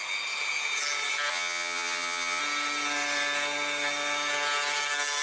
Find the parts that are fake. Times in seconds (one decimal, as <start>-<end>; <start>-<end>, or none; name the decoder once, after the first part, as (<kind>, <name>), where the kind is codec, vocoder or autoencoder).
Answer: 1.3-2.4 (vocoder, HiFi-GAN)